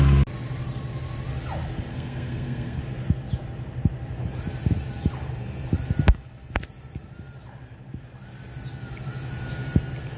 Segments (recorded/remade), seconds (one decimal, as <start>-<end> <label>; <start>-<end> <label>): 0.0-1.9 recorded; 1.9-2.8 remade; 2.8-10.2 recorded